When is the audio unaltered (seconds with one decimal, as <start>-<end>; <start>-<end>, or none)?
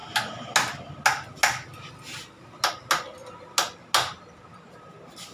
0.0-5.3